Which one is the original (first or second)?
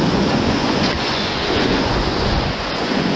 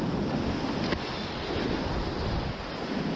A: second